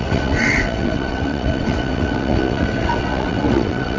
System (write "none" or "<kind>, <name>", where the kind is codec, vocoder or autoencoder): vocoder, WaveNeXt